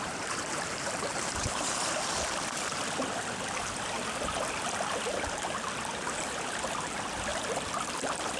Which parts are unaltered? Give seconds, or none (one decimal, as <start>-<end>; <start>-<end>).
2.0-8.4